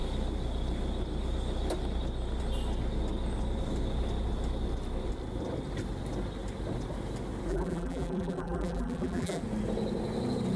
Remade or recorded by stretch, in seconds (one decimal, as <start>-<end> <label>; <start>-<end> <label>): 0.0-7.5 recorded; 7.5-9.4 remade; 9.4-10.6 recorded

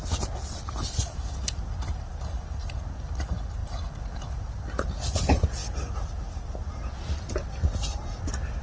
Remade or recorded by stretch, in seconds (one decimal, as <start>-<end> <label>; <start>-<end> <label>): 0.0-3.6 recorded; 3.6-4.6 remade; 4.6-8.6 recorded

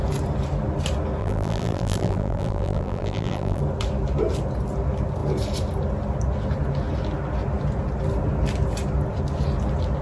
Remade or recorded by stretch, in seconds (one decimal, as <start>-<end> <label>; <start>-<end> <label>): 0.0-1.2 recorded; 1.2-3.6 remade; 3.6-10.0 recorded

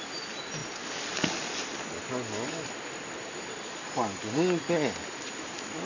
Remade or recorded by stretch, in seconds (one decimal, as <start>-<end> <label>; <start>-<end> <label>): 0.0-5.9 recorded

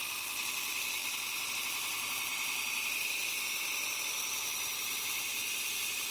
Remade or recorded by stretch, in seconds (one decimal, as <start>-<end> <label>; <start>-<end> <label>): 0.0-1.0 recorded; 1.0-1.5 remade; 1.5-6.1 recorded

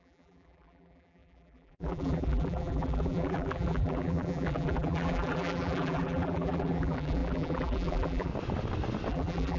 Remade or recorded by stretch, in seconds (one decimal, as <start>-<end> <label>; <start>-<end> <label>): 0.0-8.3 remade; 8.3-9.1 recorded; 9.1-9.6 remade

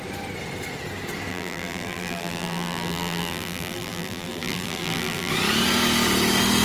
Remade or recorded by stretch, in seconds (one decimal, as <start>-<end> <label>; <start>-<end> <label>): 0.0-1.3 recorded; 1.3-5.3 remade; 5.3-6.6 recorded

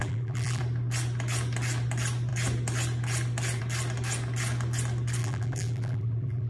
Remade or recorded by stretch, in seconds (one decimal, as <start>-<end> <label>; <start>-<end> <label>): 0.0-0.6 remade; 0.6-5.2 recorded; 5.2-6.5 remade